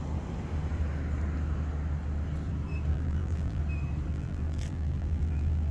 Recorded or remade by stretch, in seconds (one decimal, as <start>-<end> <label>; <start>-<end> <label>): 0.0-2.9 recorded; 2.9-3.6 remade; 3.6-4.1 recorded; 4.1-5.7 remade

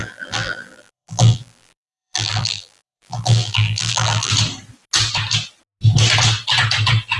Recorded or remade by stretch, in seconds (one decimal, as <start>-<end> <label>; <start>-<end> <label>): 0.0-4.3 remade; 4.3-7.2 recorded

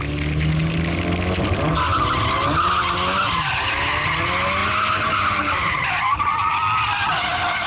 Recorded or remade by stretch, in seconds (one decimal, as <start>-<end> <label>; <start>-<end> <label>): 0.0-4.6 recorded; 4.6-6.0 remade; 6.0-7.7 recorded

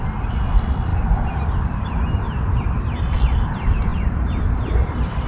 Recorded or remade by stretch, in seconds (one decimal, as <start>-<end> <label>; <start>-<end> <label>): 0.0-0.9 recorded; 0.9-2.8 remade; 2.8-5.3 recorded